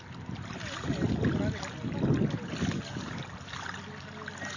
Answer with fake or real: real